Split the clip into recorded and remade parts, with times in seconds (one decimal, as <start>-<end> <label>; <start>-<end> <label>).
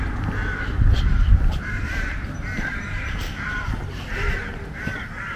0.0-0.9 recorded; 0.9-3.8 remade; 3.8-5.4 recorded